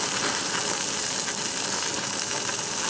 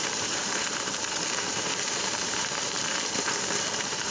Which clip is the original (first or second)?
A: first